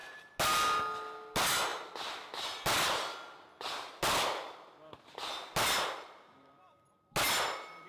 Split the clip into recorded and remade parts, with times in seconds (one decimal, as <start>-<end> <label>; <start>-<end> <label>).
0.0-7.9 recorded